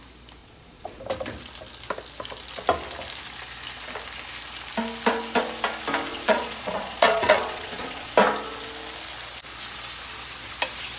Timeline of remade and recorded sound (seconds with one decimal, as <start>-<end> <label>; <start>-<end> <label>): 0.0-0.4 recorded; 0.4-1.0 remade; 1.0-6.1 recorded; 6.1-8.1 remade; 8.1-11.0 recorded